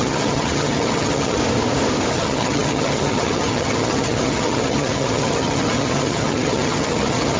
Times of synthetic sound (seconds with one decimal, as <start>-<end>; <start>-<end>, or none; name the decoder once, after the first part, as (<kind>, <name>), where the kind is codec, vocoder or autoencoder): 0.0-1.4 (vocoder, HiFi-GAN); 2.1-7.4